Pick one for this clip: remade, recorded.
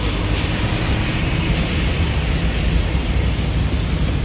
recorded